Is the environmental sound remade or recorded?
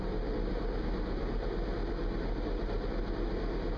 recorded